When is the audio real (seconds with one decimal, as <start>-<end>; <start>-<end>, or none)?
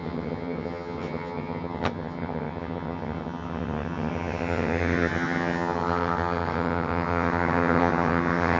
none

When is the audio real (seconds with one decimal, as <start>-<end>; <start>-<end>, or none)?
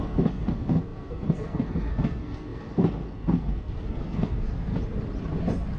4.7-5.8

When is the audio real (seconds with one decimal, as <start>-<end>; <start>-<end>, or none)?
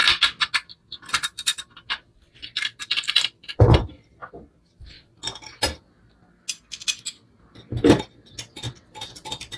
0.0-1.1; 1.5-2.8; 4.2-8.5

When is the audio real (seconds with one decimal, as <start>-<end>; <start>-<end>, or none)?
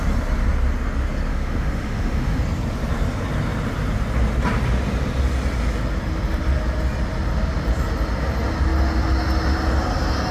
0.0-1.3; 2.4-10.3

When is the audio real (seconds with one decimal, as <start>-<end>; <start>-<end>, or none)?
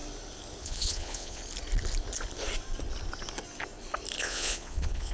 0.0-0.6; 1.4-4.2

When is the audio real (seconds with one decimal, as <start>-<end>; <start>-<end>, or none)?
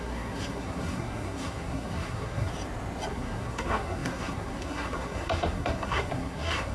2.5-3.1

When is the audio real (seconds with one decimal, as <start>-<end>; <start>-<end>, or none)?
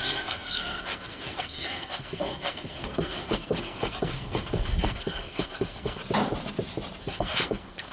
6.0-7.0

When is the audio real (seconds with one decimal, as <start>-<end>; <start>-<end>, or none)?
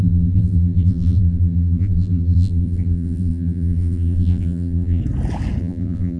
5.0-5.6